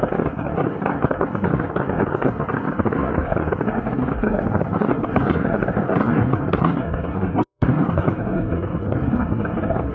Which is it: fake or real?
fake